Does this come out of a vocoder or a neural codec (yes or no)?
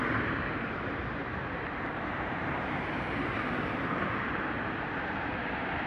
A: yes